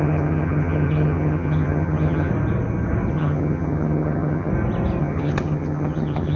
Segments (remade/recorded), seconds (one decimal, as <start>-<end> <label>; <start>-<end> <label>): 0.0-2.3 remade; 2.3-3.1 recorded; 3.1-4.5 remade; 4.5-5.0 recorded; 5.0-6.4 remade